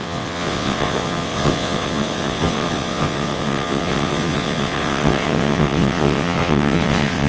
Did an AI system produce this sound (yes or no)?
yes